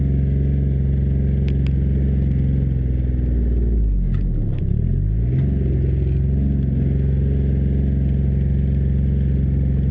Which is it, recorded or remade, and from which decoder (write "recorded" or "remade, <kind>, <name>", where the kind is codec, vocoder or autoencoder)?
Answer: recorded